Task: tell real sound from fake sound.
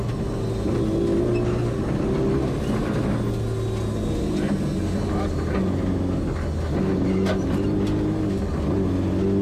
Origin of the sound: real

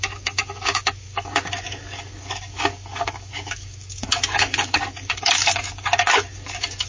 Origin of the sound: fake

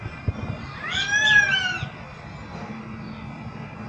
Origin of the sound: real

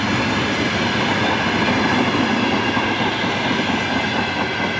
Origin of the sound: real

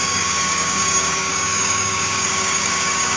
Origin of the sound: fake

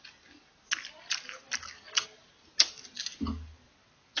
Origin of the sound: real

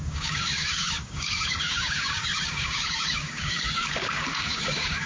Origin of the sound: fake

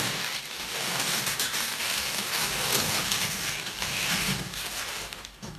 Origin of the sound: fake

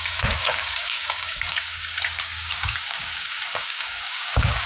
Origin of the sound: fake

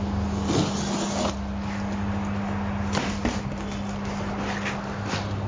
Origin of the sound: real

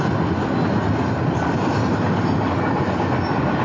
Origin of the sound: real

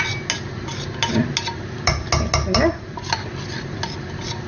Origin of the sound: real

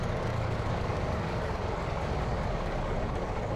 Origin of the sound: fake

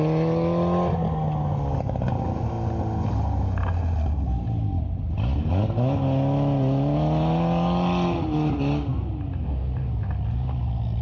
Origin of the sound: real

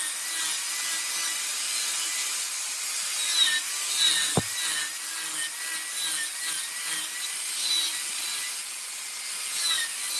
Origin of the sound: real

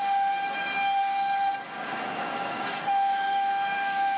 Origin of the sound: fake